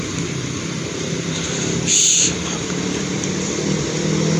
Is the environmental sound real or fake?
fake